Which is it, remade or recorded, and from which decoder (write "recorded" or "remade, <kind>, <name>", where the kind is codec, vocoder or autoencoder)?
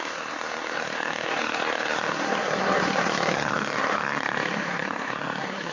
remade, codec, SNAC